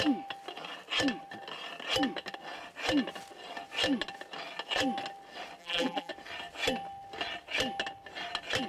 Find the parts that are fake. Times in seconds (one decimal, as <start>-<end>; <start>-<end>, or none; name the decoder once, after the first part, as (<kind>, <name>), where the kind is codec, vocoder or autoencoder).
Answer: 5.6-6.1 (vocoder, BigVGAN v2)